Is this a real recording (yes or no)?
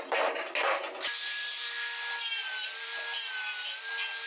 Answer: yes